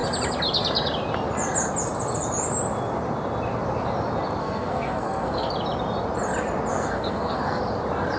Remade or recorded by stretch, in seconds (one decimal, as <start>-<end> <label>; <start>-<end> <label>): 0.0-4.4 recorded; 4.4-5.5 remade; 5.5-6.7 recorded; 6.7-7.6 remade; 7.6-8.2 recorded